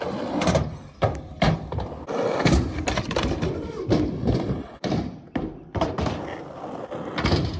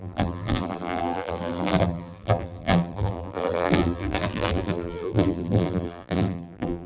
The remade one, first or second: second